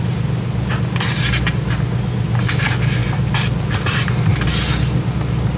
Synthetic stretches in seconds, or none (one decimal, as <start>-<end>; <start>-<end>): none